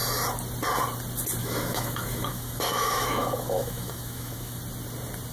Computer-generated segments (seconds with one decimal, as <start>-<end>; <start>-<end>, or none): 1.4-4.6